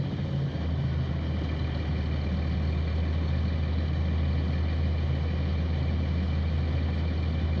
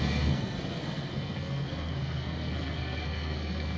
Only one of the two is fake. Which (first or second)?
second